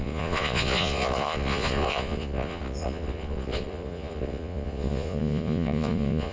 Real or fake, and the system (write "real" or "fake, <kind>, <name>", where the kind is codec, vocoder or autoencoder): fake, vocoder, Vocos